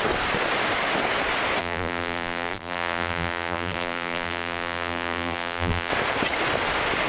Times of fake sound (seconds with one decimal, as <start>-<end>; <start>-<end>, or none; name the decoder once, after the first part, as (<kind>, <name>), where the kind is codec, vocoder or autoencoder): 1.6-5.9 (vocoder, BigVGAN v2)